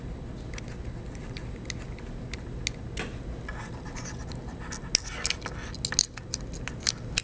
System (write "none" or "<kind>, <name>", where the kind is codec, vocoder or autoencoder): none